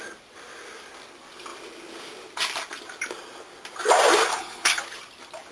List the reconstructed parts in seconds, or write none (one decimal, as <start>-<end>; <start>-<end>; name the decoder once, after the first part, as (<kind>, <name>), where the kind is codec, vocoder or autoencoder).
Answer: 4.3-4.8 (codec, HILCodec)